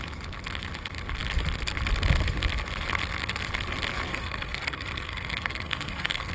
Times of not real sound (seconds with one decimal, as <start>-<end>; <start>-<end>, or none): 4.1-6.3

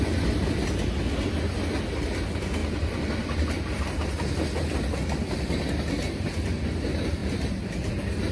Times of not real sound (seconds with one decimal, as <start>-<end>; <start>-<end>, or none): 2.6-3.8